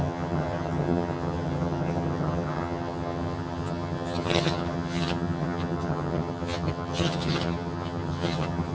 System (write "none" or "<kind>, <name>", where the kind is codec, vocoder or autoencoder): vocoder, HiFi-GAN